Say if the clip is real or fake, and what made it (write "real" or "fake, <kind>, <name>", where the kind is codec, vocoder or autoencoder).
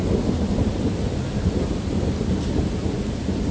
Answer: real